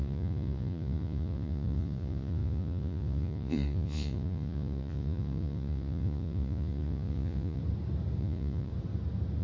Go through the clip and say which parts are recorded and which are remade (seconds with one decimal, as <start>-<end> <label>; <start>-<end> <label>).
0.0-7.6 remade; 7.6-8.2 recorded; 8.2-8.7 remade; 8.7-9.4 recorded